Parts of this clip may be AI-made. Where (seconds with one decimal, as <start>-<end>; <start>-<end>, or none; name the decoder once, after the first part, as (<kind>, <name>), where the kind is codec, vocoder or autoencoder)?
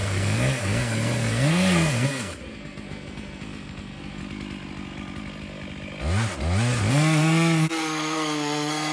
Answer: 0.0-4.2 (codec, SNAC); 6.9-8.9